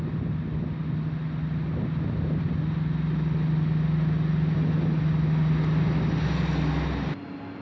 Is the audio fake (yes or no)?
no